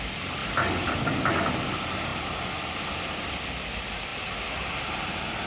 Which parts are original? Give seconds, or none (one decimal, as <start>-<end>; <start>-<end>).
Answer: 0.0-5.5